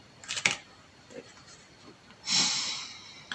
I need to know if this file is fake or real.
real